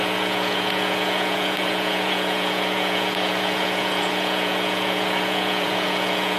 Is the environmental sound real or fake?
fake